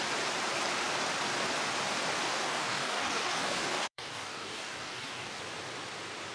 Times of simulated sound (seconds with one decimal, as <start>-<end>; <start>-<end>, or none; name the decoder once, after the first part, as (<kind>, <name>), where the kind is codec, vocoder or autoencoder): 2.3-5.4 (codec, DAC)